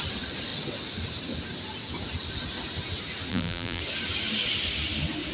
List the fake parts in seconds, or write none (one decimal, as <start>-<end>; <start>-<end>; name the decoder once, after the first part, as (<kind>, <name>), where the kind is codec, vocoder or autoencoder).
3.3-3.8 (vocoder, BigVGAN v2)